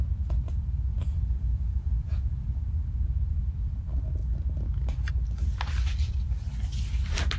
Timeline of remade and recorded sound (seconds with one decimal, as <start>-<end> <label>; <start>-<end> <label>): 0.0-0.9 recorded; 0.9-2.6 remade; 2.6-7.4 recorded